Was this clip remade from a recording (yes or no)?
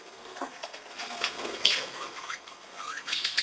yes